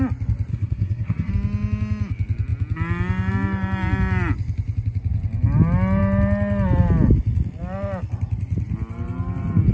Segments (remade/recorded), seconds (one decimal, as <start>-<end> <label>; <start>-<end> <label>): 0.0-0.5 recorded; 0.5-1.3 remade; 1.3-9.7 recorded